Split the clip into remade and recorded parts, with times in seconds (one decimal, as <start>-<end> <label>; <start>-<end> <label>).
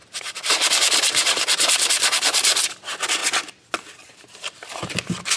0.0-2.8 remade; 2.8-5.4 recorded